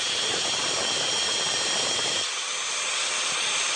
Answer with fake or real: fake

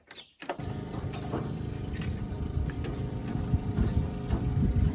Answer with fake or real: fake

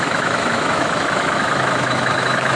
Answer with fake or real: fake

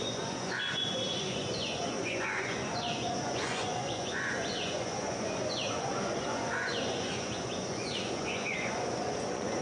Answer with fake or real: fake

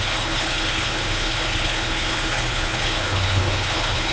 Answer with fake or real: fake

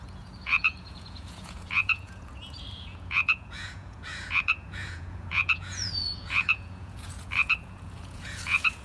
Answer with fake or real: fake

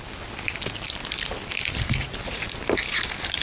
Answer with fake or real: real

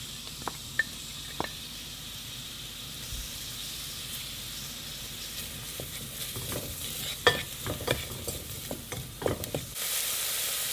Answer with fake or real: fake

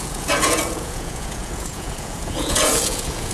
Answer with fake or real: fake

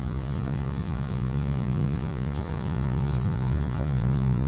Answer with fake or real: fake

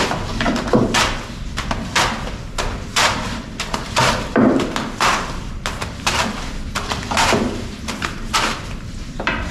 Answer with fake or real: fake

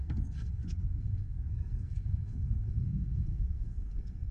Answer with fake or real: fake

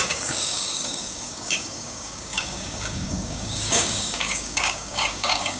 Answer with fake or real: fake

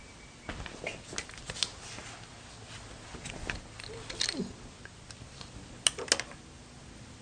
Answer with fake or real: real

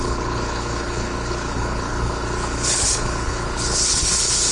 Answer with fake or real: fake